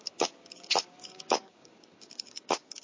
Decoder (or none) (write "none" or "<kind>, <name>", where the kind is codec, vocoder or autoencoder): codec, DAC